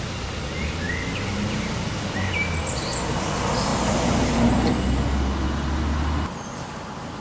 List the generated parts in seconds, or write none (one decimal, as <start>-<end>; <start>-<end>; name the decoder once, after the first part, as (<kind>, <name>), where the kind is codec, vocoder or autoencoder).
none